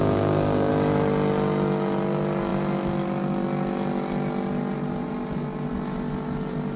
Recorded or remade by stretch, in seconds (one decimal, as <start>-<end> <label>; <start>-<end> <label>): 0.0-0.7 remade; 0.7-6.8 recorded